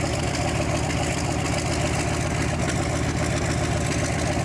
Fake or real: real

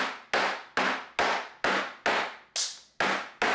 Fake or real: real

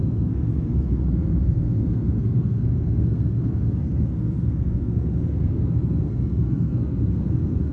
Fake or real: fake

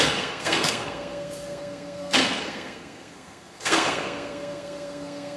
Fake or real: fake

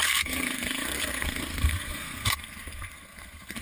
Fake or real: fake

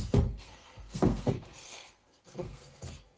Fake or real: fake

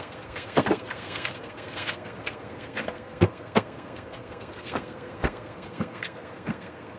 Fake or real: fake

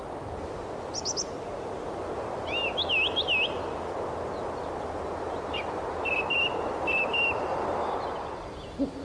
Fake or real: real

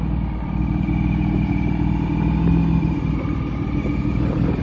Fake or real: real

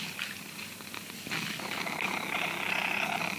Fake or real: real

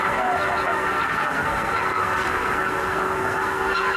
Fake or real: fake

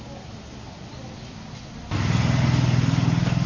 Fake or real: real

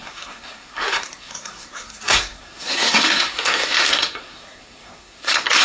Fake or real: fake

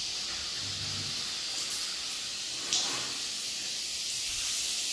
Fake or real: real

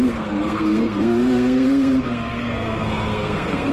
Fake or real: fake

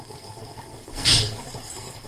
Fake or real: fake